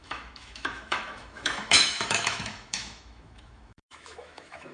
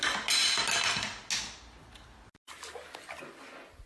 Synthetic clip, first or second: first